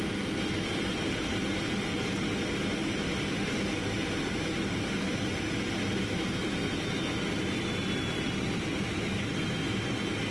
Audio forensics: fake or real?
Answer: real